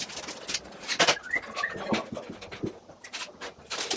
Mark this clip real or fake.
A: real